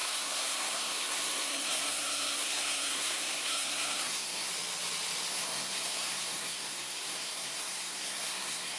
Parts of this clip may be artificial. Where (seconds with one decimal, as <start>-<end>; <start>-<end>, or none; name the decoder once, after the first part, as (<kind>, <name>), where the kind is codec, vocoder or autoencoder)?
0.0-4.5 (codec, SNAC); 5.3-8.8